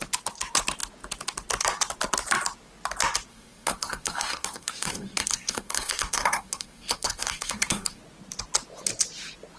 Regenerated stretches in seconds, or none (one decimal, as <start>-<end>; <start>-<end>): 3.3-8.0